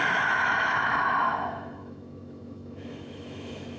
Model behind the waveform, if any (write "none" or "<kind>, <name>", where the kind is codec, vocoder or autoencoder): autoencoder, DAC-VAE